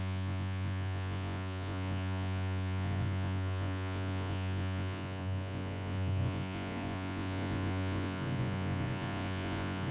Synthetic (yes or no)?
yes